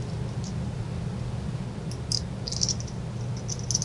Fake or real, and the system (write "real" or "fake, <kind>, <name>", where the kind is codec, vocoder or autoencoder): real